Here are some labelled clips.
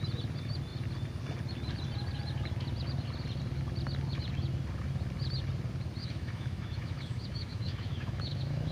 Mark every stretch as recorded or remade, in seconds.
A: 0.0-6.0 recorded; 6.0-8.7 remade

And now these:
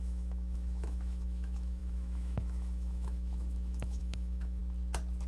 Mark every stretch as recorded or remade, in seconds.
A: 0.0-4.6 remade; 4.6-5.3 recorded

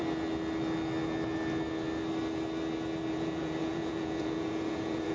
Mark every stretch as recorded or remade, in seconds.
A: 0.0-3.1 recorded; 3.1-5.1 remade